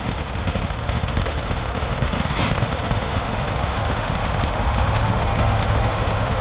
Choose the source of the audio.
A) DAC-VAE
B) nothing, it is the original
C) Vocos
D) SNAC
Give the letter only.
A